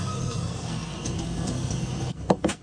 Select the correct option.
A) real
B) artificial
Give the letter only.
B